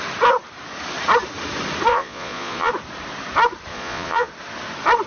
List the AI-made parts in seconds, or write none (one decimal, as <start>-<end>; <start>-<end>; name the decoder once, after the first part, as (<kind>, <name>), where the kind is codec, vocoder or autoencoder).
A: 1.9-2.7 (vocoder, Vocos); 3.7-4.3